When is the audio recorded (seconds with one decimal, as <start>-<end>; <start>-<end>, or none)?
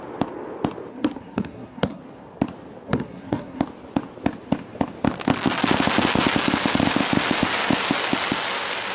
0.0-0.9; 2.0-2.9; 3.6-8.9